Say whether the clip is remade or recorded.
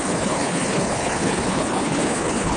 remade